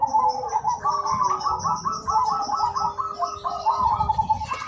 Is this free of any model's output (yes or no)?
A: yes